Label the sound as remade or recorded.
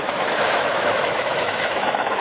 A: remade